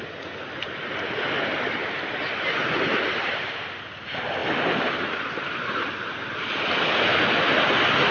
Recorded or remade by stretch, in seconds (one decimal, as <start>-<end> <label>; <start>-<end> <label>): 0.0-8.1 recorded